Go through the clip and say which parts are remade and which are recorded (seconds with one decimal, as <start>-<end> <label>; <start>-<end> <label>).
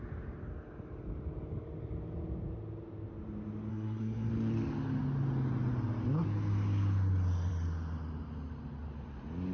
0.0-3.7 recorded; 3.7-4.3 remade; 4.3-9.5 recorded